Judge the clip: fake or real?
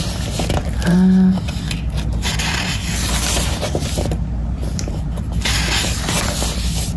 real